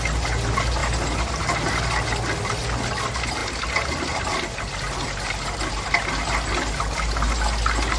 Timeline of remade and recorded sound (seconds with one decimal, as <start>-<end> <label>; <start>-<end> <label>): 0.0-8.0 recorded